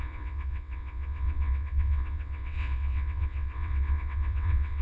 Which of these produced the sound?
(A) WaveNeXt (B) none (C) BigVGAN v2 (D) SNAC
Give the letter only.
A